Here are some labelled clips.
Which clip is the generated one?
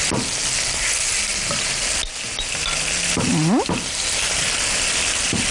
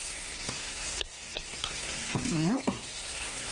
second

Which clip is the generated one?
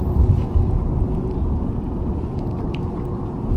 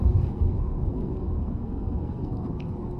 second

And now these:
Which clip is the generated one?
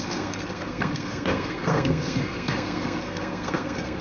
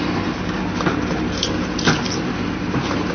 first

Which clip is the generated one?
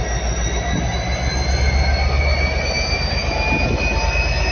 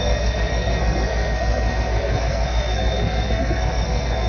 second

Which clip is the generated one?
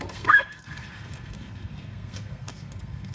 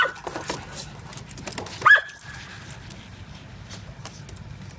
first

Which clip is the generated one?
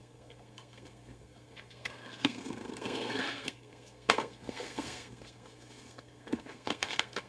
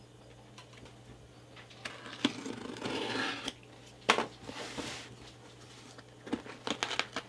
first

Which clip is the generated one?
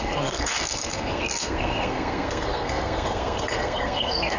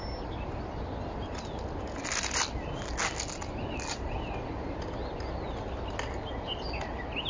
first